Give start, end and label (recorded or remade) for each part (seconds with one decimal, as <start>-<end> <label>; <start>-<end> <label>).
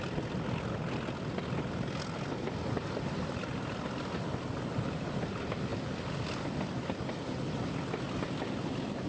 0.0-9.1 recorded